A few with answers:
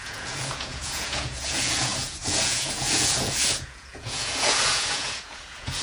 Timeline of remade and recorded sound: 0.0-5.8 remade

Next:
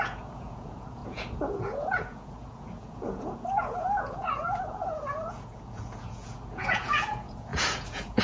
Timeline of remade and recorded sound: 0.0-8.2 remade

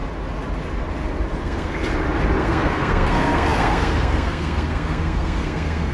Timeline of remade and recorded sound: 0.0-1.4 recorded; 1.4-1.8 remade; 1.8-2.4 recorded; 2.4-5.9 remade